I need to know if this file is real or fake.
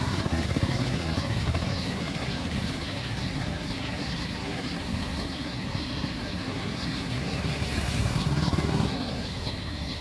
fake